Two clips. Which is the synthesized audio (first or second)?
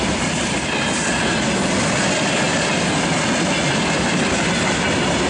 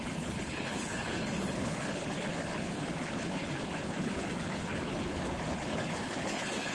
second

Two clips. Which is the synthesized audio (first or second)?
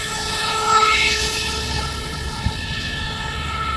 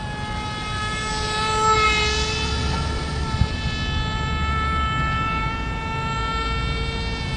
first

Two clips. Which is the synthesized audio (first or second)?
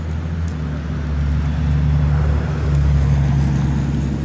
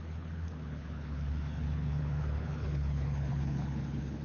second